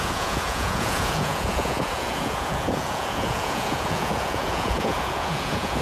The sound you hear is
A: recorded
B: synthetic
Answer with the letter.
B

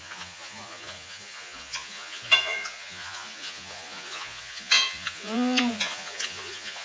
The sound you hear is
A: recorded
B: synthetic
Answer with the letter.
B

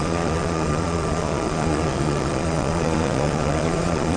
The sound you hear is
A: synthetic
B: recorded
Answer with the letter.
A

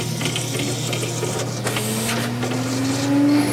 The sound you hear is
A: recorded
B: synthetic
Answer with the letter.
A